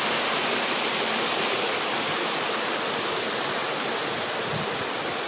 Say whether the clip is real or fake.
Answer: real